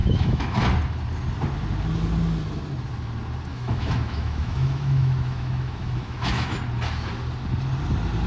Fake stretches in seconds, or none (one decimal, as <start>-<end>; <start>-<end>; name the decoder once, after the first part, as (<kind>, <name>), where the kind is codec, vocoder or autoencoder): 0.0-0.6 (autoencoder, DAC-VAE); 3.5-6.6